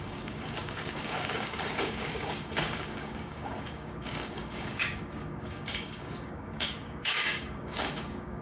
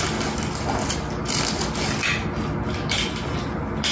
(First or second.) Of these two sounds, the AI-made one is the first